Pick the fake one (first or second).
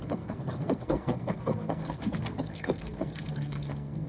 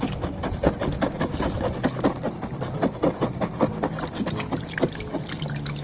first